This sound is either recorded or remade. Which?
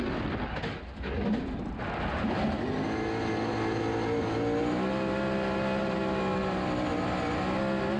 recorded